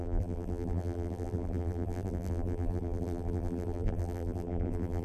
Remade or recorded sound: remade